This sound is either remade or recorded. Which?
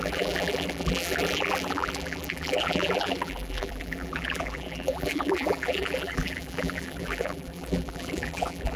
remade